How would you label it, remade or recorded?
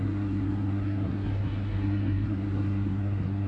remade